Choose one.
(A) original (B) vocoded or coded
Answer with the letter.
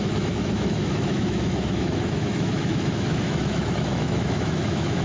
B